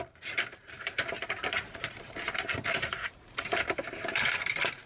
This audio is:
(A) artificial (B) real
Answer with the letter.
A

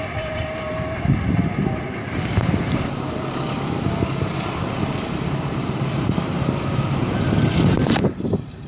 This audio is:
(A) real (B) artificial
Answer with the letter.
B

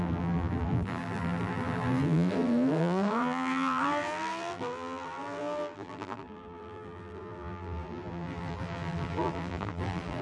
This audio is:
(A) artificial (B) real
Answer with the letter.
A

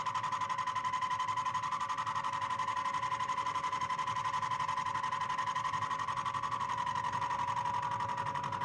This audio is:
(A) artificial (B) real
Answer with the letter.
B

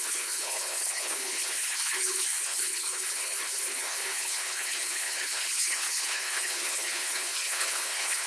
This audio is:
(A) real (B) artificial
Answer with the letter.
B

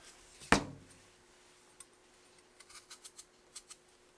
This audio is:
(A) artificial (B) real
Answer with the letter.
B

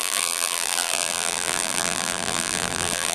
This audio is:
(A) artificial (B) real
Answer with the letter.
A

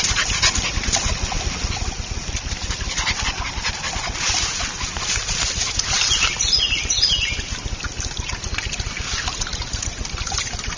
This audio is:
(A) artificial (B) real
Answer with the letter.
B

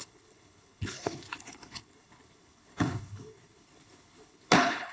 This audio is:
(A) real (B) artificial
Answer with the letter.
B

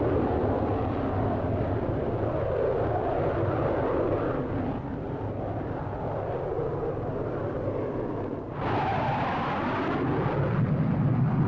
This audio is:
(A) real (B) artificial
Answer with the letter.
A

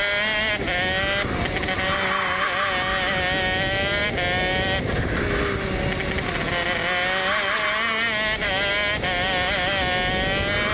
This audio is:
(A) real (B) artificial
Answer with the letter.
A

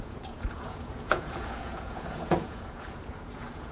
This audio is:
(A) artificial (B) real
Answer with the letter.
A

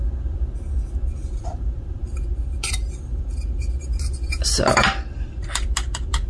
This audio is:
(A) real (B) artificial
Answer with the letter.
B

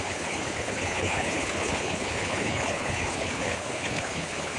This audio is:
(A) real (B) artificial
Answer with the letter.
B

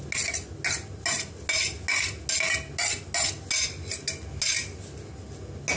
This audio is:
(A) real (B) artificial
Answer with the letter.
A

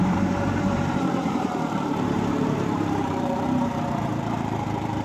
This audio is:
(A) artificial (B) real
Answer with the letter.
A